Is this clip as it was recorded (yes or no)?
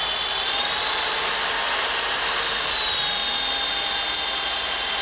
yes